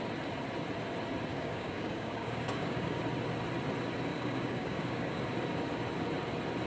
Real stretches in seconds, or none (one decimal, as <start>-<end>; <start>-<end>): 0.0-1.3; 3.0-4.1; 5.2-6.7

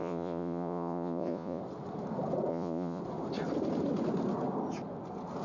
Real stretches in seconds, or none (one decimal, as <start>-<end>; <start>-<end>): 1.6-2.5; 3.0-5.4

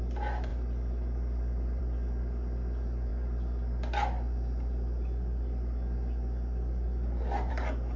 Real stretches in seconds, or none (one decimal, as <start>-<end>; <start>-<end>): 0.0-8.0